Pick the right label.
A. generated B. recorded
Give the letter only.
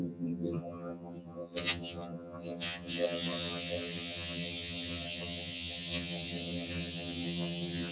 A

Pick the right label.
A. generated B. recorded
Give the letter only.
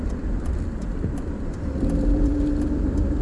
A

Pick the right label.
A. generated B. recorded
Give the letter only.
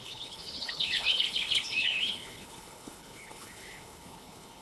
A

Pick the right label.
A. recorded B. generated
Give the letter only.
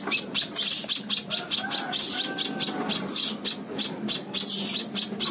A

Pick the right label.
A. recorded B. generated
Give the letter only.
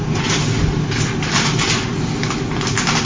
A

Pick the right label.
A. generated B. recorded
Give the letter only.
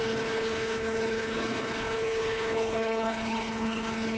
A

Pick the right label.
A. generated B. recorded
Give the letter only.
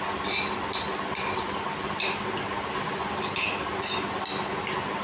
B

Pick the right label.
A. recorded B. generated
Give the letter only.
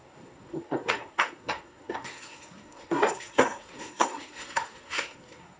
B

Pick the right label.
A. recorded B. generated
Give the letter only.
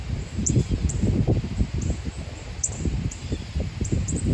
B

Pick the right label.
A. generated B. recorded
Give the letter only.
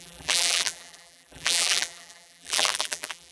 A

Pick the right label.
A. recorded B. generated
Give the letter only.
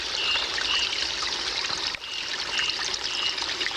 A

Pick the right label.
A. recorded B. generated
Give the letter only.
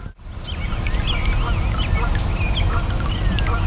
A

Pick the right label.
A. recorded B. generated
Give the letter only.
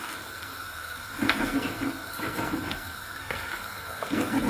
B